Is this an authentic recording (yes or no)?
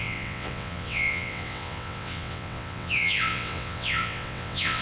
no